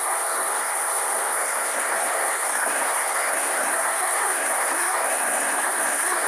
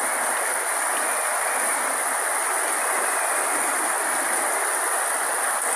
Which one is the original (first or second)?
second